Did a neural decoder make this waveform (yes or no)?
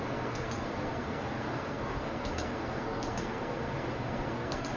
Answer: yes